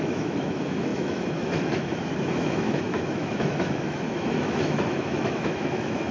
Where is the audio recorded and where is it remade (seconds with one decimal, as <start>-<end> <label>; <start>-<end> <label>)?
0.0-6.1 remade